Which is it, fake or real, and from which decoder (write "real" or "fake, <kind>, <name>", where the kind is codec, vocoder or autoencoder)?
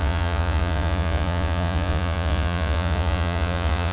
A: fake, vocoder, Vocos